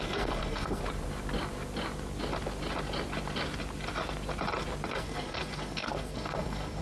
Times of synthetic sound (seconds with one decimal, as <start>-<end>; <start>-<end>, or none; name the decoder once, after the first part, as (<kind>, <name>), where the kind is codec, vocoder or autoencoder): 0.0-0.8 (codec, SNAC); 4.9-6.8